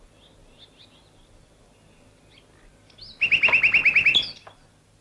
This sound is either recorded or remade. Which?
recorded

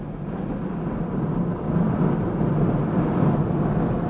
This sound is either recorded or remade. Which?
recorded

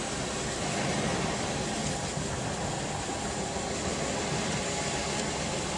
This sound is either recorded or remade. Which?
recorded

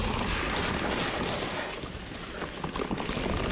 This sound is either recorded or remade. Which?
recorded